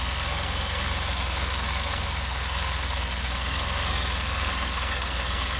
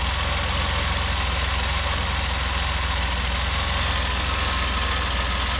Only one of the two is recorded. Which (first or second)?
second